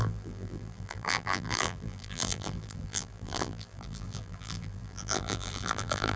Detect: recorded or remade remade